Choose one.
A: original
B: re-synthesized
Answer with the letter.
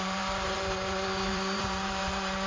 B